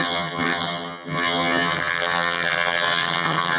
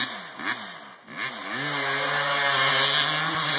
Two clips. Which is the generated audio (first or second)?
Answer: first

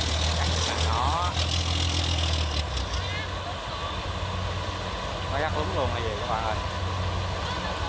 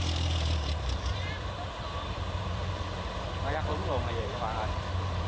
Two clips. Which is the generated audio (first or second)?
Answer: second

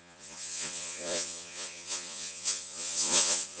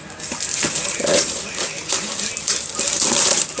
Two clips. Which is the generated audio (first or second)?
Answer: first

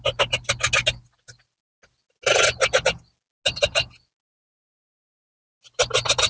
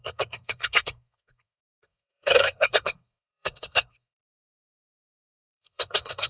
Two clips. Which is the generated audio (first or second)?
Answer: second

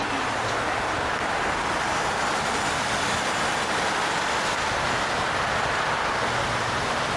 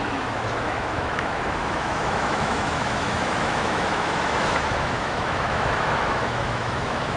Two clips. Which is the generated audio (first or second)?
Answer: second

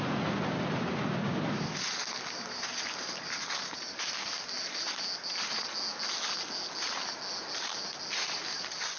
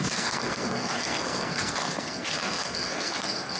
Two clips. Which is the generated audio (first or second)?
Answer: second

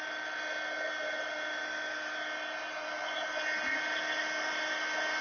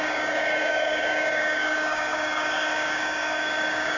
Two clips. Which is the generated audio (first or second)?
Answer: second